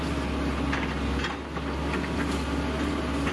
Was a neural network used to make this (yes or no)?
no